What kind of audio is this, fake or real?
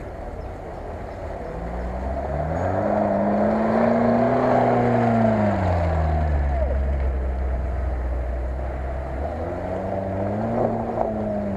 real